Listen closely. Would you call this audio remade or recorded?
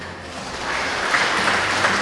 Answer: remade